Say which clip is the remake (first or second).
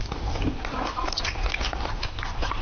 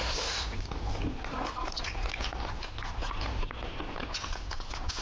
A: first